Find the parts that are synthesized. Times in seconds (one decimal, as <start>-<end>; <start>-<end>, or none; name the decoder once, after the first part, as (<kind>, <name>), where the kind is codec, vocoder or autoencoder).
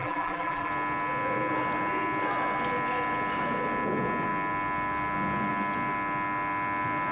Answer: 0.0-0.7 (vocoder, BigVGAN v2)